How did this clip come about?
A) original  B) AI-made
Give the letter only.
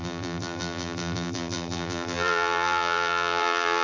B